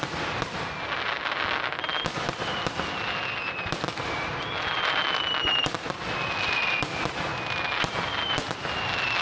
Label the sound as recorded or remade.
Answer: recorded